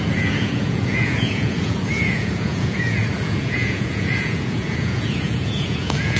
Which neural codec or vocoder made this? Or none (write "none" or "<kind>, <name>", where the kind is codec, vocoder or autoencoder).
vocoder, Vocos